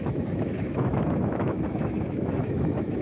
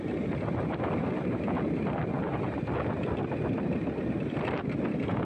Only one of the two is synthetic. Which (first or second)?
first